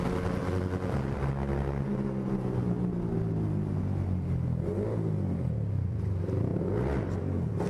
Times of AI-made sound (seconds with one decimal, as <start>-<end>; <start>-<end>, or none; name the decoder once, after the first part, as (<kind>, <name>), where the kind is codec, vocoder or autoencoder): none